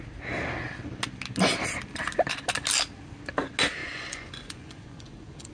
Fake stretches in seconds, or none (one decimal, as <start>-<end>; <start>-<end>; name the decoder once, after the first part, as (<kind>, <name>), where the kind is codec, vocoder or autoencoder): 3.8-5.5 (vocoder, Vocos)